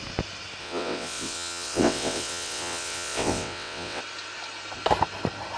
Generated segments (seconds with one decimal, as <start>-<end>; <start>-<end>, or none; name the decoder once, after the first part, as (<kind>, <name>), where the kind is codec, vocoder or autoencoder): 0.6-4.0 (vocoder, WaveNeXt)